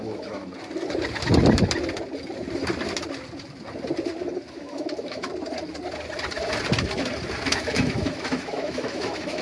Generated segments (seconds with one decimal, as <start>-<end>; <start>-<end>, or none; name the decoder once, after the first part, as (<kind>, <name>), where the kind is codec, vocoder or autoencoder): 0.0-0.4 (autoencoder, DAC-VAE); 4.5-5.3; 7.5-9.4